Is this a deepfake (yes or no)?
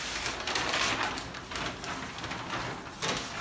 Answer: no